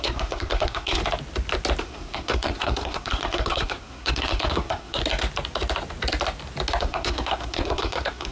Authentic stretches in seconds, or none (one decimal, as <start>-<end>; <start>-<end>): 1.0-1.8; 5.0-6.8